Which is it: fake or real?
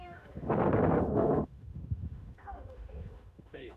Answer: fake